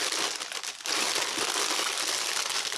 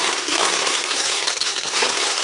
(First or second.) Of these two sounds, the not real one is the second